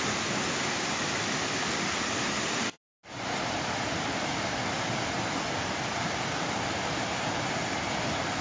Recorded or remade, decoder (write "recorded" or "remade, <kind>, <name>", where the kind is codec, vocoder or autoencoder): recorded